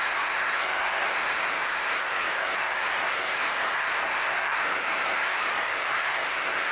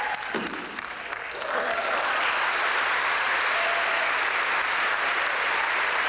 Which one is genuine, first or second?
second